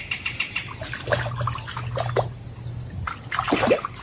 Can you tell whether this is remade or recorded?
recorded